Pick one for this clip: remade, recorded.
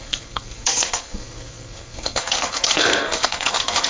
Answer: remade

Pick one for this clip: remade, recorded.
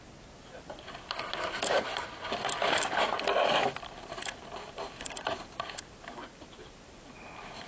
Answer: recorded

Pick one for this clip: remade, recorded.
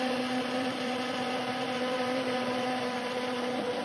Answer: remade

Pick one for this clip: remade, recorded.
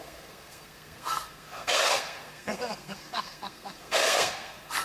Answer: remade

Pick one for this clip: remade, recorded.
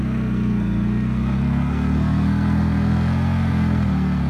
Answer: remade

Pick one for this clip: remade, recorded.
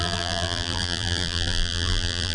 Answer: remade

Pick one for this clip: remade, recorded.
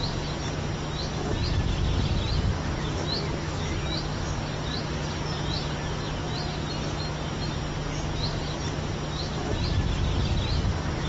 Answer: recorded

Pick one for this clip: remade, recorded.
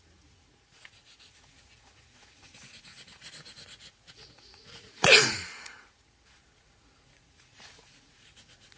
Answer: remade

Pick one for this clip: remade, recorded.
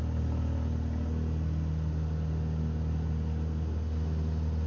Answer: recorded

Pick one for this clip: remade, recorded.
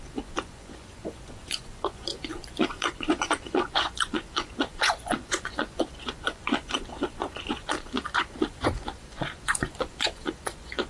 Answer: remade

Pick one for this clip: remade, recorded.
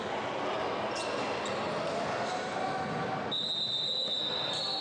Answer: recorded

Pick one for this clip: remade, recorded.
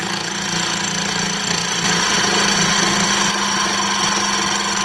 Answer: recorded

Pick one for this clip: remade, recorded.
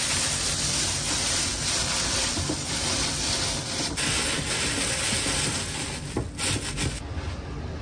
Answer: recorded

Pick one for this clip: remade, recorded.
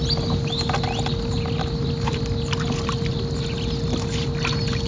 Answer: recorded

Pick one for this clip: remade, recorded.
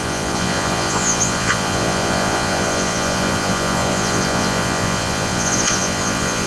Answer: remade